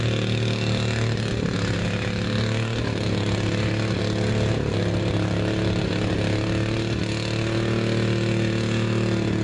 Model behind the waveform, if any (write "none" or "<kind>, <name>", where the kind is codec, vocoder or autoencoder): none